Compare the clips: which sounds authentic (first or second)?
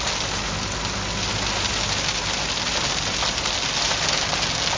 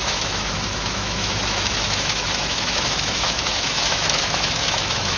first